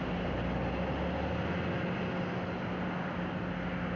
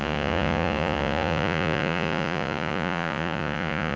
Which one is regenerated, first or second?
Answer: second